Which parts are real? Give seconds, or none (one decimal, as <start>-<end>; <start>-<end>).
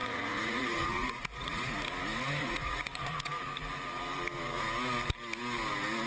1.7-2.4; 3.3-6.1